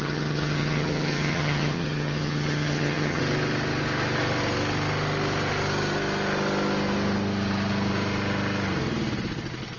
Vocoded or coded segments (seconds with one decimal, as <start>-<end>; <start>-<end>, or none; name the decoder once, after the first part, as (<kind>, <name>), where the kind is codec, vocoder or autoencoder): 0.0-3.2 (vocoder, HiFi-GAN)